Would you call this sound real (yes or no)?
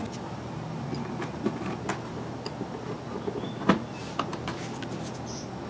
yes